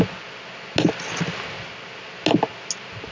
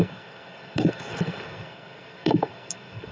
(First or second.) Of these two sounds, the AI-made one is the second